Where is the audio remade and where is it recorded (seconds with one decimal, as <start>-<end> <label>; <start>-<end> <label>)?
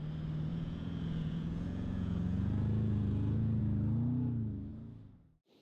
0.0-0.5 recorded; 0.5-3.6 remade; 3.6-5.6 recorded